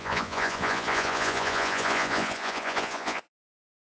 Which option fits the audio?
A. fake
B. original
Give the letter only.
A